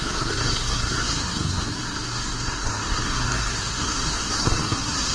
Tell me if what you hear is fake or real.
fake